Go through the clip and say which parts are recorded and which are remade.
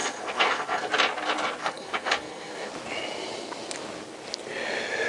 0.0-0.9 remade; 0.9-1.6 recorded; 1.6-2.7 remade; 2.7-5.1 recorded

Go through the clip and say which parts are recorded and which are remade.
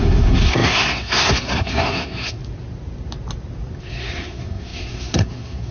0.0-2.4 remade; 2.4-3.8 recorded; 3.8-5.7 remade